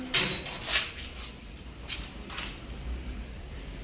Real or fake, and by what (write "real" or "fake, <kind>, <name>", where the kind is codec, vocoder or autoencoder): fake, vocoder, BigVGAN v2